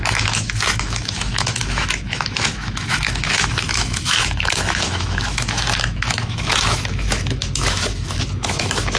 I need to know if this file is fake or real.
fake